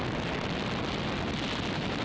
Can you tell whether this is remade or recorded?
recorded